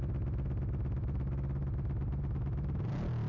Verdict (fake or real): real